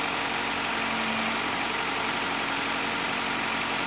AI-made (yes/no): no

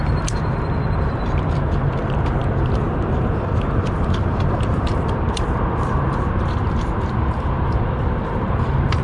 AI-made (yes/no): yes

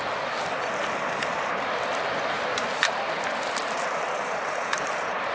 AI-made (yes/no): yes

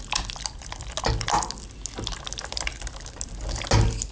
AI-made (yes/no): no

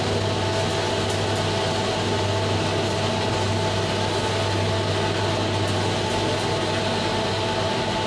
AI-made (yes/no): no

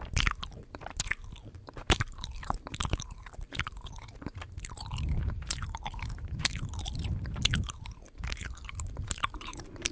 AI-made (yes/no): yes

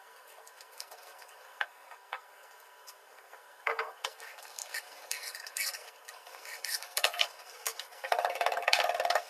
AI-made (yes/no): yes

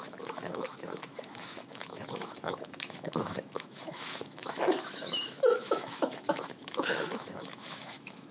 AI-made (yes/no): yes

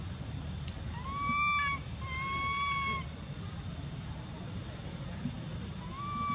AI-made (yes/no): no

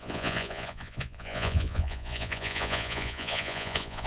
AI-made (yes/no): yes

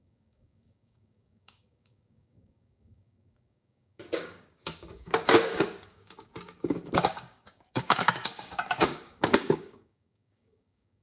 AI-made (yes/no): yes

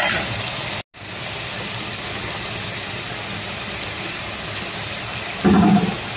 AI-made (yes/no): no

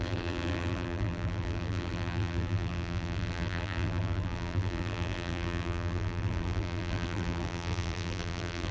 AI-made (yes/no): yes